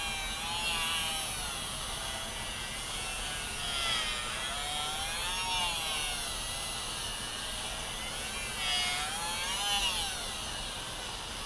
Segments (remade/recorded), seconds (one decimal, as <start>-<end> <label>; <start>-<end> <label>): 0.0-7.3 recorded; 7.3-8.1 remade; 8.1-11.5 recorded